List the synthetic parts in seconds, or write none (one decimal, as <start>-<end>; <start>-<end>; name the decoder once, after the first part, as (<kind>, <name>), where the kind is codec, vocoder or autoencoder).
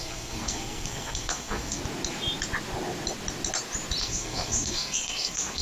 0.0-1.8 (codec, SNAC); 4.0-5.6